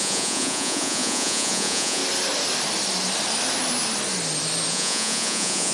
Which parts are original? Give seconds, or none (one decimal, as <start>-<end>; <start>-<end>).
2.0-4.7